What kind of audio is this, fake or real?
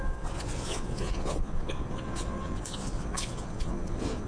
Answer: fake